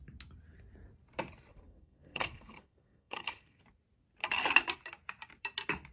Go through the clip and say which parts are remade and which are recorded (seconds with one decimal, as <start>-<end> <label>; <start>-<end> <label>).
0.0-1.5 recorded; 1.5-3.6 remade; 3.6-5.9 recorded